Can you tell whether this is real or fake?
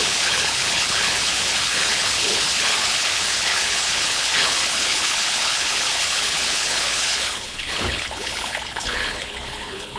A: fake